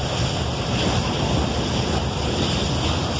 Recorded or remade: recorded